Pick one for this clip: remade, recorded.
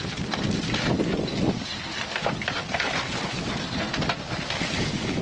recorded